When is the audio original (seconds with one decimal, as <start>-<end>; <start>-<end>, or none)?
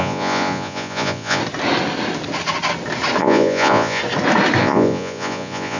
1.4-3.2; 4.0-4.6